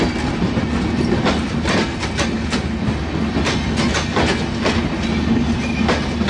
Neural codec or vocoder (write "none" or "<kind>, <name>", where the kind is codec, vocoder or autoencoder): none